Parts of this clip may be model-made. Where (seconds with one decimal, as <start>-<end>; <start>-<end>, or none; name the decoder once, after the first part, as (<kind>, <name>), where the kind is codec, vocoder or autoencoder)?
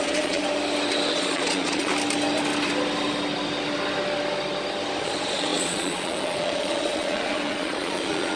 0.0-0.4 (vocoder, Vocos); 1.1-1.9; 5.0-8.4